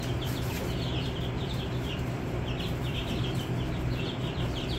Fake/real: fake